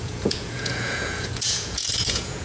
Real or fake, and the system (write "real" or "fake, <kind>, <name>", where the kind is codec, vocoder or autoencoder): fake, vocoder, Vocos